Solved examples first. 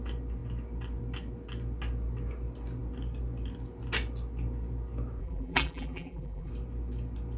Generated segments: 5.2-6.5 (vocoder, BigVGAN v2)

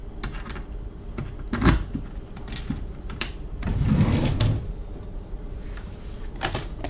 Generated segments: 2.1-3.7 (vocoder, BigVGAN v2); 5.1-6.9

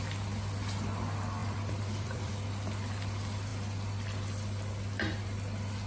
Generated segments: 1.4-2.3 (vocoder, BigVGAN v2)

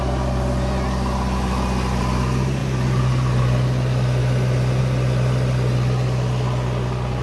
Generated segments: 2.6-3.4 (vocoder, BigVGAN v2)